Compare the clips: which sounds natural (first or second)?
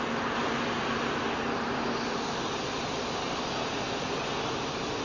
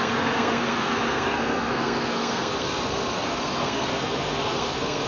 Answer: first